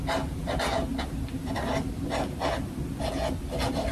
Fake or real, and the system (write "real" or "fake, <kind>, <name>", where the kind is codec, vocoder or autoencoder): real